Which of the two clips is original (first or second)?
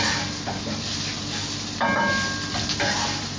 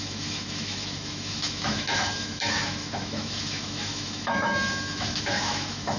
first